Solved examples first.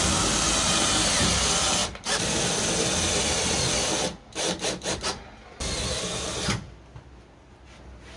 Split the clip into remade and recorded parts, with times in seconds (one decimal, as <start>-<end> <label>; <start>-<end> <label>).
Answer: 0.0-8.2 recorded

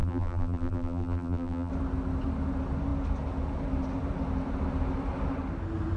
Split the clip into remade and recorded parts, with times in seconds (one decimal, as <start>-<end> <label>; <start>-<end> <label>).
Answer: 0.0-1.7 remade; 1.7-6.0 recorded

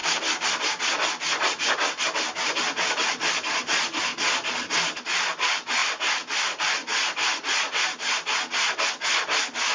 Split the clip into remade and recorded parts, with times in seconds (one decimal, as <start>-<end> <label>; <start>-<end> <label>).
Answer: 0.0-9.7 recorded

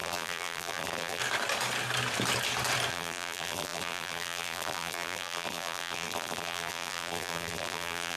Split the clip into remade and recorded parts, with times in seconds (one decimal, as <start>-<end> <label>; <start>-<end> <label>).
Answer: 0.0-1.2 remade; 1.2-2.9 recorded; 2.9-8.2 remade